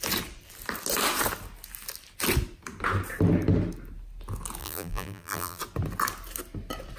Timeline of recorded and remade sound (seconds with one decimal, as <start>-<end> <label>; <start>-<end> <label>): 0.0-4.6 recorded; 4.6-5.6 remade; 5.6-7.0 recorded